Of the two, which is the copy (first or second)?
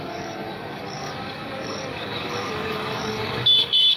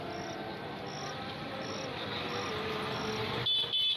first